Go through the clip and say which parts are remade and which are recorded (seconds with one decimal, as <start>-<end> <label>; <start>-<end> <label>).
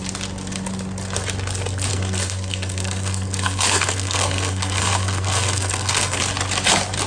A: 0.0-1.9 recorded; 1.9-6.2 remade; 6.2-7.1 recorded